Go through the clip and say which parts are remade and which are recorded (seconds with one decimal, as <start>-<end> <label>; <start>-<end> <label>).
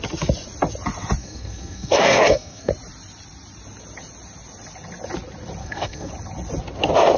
0.0-1.2 recorded; 1.2-2.7 remade; 2.7-5.6 recorded; 5.6-6.1 remade; 6.1-7.2 recorded